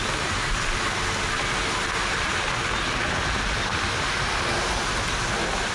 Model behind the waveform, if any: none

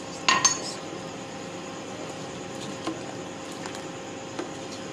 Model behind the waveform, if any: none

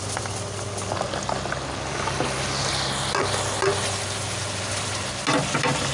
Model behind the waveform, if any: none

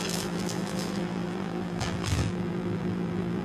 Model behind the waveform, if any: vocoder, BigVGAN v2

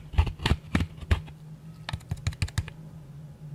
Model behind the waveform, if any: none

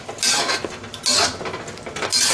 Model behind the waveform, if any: none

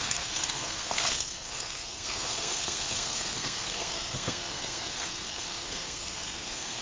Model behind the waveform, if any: codec, SNAC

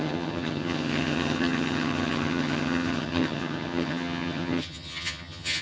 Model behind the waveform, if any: vocoder, HiFi-GAN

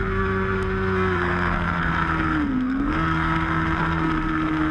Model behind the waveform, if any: codec, SNAC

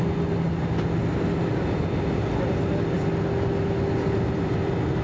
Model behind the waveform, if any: none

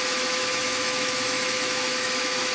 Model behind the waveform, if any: autoencoder, DAC-VAE